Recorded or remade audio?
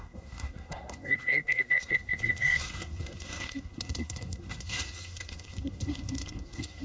remade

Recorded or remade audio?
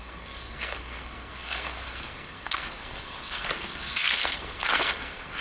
remade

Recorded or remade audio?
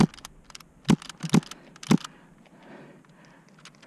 recorded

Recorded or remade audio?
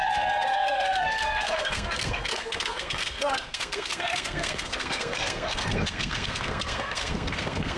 remade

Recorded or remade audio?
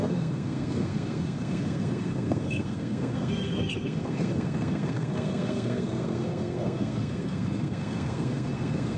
remade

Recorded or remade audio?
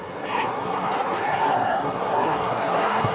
remade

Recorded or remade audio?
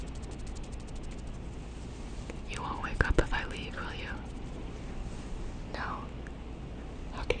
recorded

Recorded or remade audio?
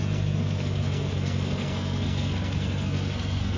remade